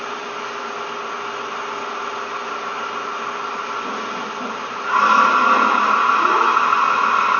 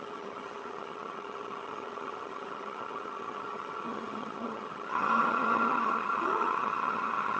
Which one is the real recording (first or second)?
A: first